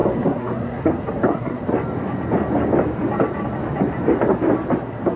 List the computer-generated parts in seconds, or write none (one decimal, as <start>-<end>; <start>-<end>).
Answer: 0.0-1.7; 4.8-5.2